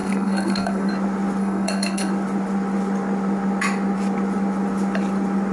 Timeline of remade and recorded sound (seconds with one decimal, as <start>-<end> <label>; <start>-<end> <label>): 0.0-0.9 remade; 0.9-1.4 recorded; 1.4-2.1 remade; 2.1-5.5 recorded